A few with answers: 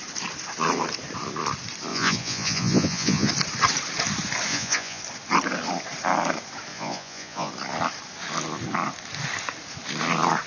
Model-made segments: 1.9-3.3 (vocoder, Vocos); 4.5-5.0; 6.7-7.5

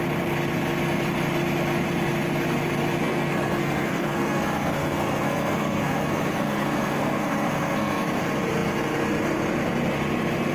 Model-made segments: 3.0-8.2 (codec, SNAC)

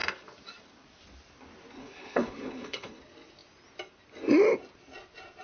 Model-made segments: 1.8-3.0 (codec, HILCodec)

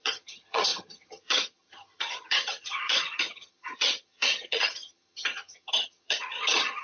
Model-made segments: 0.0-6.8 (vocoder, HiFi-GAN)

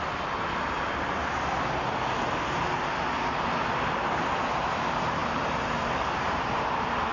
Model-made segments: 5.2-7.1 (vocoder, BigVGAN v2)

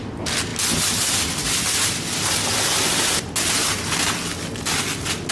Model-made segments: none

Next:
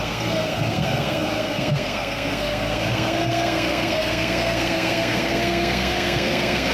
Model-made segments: 0.0-6.7 (codec, SNAC)

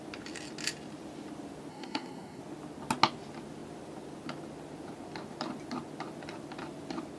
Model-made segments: 1.7-2.4 (codec, SNAC)